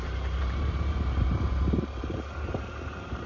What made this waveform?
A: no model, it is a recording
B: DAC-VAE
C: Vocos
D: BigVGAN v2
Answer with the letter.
D